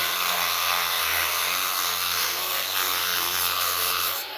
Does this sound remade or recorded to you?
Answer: remade